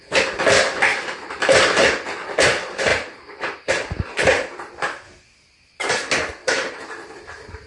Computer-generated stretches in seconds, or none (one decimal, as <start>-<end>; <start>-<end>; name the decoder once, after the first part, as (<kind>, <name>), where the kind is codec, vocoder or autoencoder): 0.9-1.7 (vocoder, BigVGAN v2); 2.9-4.7; 6.4-7.7